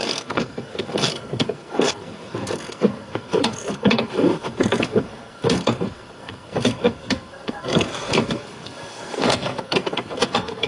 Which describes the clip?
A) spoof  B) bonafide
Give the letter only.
A